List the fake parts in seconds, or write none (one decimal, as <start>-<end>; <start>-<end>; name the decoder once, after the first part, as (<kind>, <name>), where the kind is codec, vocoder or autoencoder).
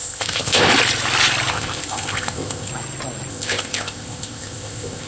0.0-0.7 (codec, ZipCodec); 1.5-2.7; 3.3-5.1